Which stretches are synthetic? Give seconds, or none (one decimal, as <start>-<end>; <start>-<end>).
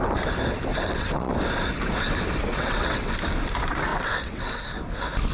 0.7-1.3; 2.5-3.1; 3.9-4.6